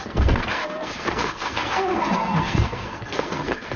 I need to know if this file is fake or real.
fake